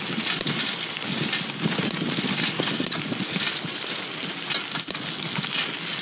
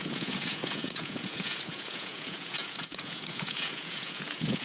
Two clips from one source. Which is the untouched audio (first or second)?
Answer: first